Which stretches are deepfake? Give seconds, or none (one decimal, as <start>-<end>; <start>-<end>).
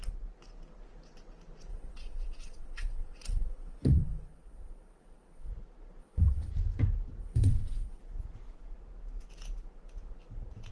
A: 1.7-5.5; 6.0-6.5; 7.2-8.0